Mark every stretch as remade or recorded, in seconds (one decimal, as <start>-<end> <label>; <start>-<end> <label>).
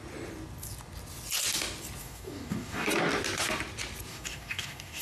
0.0-2.0 recorded; 2.0-2.9 remade; 2.9-4.1 recorded; 4.1-5.0 remade